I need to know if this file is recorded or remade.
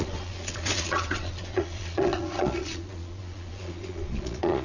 remade